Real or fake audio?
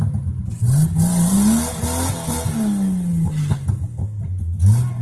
real